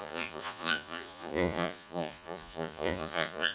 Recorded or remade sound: remade